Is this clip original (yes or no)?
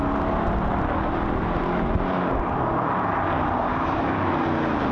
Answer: yes